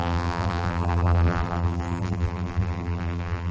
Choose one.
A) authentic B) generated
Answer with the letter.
B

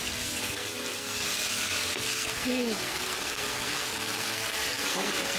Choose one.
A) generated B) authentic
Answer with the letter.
A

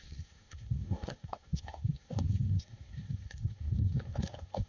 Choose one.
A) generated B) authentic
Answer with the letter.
A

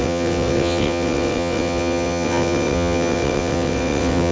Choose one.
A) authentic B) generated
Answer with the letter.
B